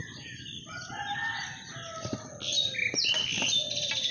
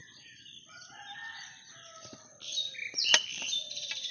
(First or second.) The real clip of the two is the first